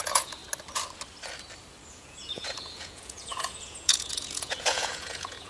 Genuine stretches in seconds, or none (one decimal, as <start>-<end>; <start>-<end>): 0.4-1.9